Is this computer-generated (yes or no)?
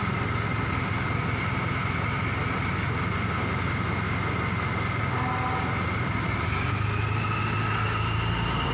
no